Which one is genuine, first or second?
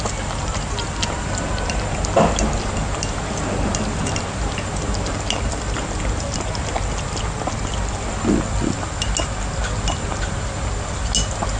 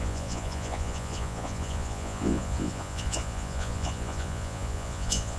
first